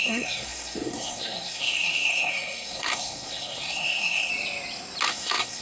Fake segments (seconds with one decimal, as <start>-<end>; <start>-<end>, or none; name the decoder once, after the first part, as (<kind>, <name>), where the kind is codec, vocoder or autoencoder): 0.0-4.3 (codec, SNAC); 5.1-5.6